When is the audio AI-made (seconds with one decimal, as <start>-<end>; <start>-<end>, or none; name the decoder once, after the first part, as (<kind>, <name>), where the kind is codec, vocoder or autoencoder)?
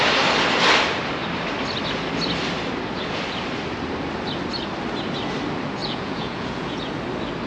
5.8-6.9 (vocoder, Vocos)